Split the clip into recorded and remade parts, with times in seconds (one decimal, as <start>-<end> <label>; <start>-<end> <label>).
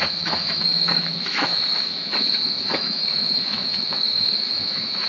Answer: 0.0-5.1 remade